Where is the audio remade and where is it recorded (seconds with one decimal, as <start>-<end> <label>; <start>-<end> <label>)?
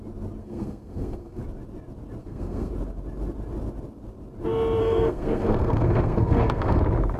0.0-0.4 recorded; 0.4-1.4 remade; 1.4-2.2 recorded; 2.2-2.7 remade; 2.7-4.8 recorded; 4.8-6.8 remade; 6.8-7.2 recorded